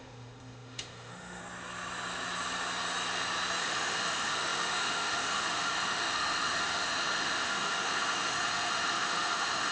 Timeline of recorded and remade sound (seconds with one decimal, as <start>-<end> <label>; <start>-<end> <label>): 0.0-1.4 remade; 1.4-3.6 recorded; 3.6-9.7 remade